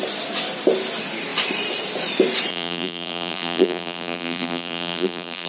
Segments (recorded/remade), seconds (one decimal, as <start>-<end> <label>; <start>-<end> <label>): 0.0-2.5 recorded; 2.5-5.5 remade